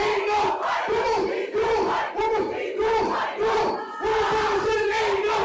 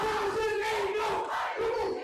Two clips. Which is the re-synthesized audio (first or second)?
first